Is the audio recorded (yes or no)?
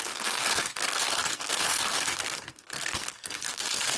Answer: no